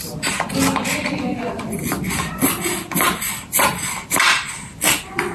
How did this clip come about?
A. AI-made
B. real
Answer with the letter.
B